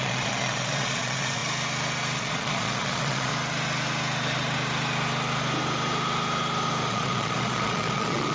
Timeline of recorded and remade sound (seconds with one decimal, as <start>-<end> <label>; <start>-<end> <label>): 0.0-1.4 remade; 1.4-2.2 recorded; 2.2-3.3 remade; 3.3-6.9 recorded; 6.9-8.3 remade